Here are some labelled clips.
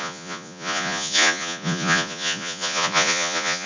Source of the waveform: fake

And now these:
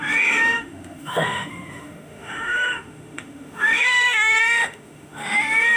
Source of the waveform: fake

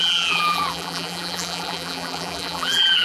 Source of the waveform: fake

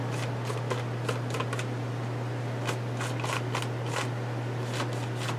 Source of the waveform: real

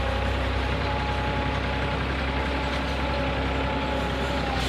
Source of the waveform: real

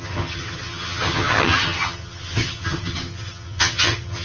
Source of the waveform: fake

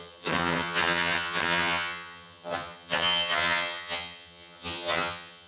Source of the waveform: fake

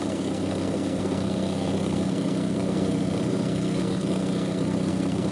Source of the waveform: fake